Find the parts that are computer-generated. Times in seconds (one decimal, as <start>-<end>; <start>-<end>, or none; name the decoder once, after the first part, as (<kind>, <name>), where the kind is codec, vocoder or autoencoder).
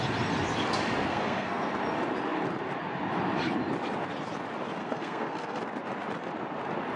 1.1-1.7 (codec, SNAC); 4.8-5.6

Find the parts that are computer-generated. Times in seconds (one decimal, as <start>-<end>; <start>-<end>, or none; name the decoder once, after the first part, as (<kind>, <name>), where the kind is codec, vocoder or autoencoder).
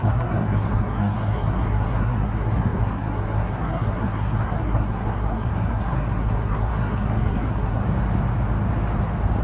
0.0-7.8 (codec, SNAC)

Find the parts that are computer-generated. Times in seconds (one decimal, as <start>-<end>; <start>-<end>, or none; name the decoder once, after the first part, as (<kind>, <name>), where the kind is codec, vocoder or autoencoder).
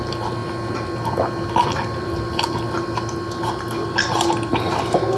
none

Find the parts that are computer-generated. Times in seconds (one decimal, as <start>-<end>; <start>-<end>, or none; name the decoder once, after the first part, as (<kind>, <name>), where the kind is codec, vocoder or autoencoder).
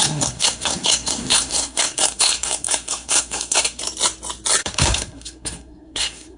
0.0-3.8 (codec, SNAC); 4.6-6.4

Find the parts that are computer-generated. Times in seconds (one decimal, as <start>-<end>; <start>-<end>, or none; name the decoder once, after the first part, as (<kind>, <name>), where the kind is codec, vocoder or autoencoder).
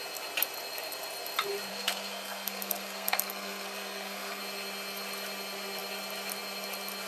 1.7-4.4 (codec, SNAC)